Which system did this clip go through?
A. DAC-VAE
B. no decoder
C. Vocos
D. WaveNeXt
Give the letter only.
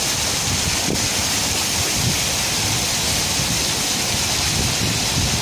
B